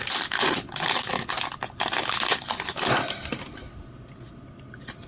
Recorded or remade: recorded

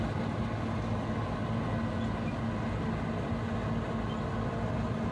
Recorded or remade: recorded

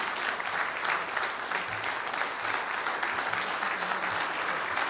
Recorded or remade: recorded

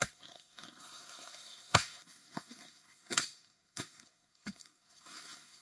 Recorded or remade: remade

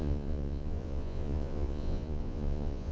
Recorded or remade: remade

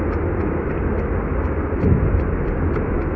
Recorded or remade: recorded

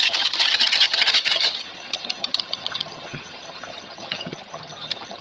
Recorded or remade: remade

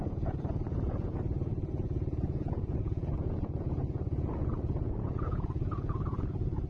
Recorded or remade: remade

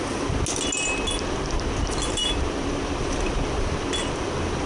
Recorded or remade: recorded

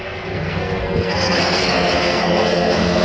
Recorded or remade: remade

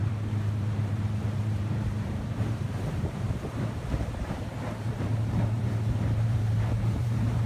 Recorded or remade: remade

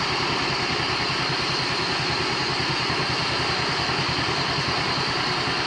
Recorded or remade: recorded